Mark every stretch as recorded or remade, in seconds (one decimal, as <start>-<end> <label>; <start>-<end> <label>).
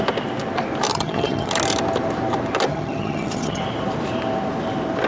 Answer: 0.0-0.9 recorded; 0.9-1.5 remade; 1.5-2.7 recorded; 2.7-3.6 remade; 3.6-5.1 recorded